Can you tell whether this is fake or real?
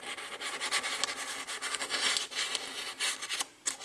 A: real